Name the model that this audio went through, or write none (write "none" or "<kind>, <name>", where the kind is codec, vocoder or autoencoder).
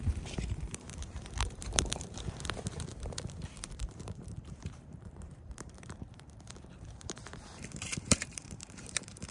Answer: vocoder, BigVGAN v2